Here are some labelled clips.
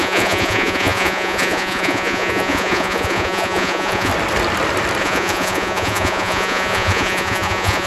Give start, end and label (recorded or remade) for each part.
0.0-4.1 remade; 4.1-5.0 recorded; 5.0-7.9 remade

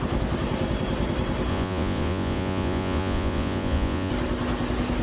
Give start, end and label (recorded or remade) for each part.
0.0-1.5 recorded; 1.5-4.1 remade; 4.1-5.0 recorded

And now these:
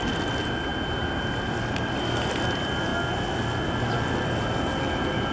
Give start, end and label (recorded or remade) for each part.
0.0-5.3 recorded